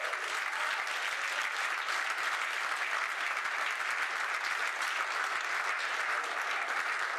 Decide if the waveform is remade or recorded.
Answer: recorded